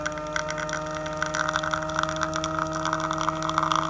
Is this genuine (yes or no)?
yes